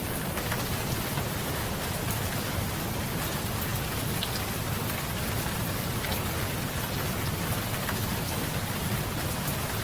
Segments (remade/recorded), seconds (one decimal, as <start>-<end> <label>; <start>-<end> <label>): 0.0-9.8 recorded